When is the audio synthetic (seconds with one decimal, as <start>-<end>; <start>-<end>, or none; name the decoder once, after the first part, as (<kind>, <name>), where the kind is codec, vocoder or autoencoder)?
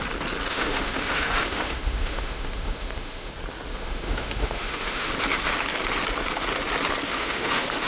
0.5-3.3 (autoencoder, DAC-VAE); 3.7-5.1; 7.1-7.9